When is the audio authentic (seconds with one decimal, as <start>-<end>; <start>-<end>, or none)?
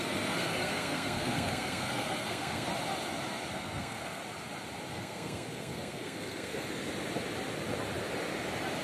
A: 2.7-3.5; 4.2-4.9; 6.8-8.8